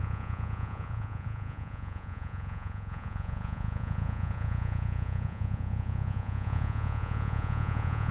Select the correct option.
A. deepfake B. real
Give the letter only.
A